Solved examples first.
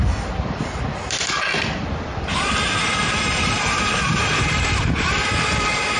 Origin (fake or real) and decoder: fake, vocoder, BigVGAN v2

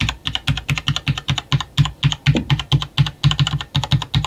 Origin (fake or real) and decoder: real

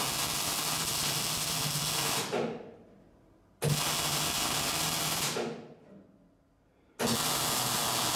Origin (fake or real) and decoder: real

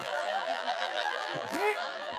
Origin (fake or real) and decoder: fake, vocoder, BigVGAN v2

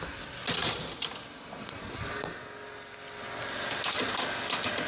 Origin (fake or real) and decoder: real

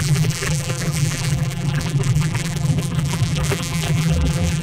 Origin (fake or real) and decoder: fake, vocoder, BigVGAN v2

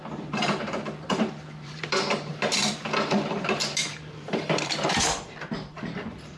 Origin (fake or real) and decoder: fake, vocoder, BigVGAN v2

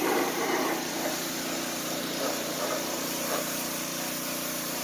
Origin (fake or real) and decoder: fake, vocoder, BigVGAN v2